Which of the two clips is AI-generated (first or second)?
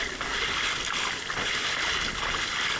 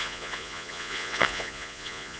second